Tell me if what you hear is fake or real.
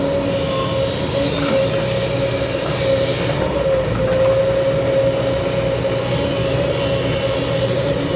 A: real